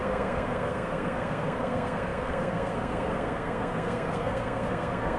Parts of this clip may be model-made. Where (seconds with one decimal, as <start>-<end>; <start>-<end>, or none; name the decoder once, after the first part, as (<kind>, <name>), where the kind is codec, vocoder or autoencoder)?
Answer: 0.0-5.2 (codec, SNAC)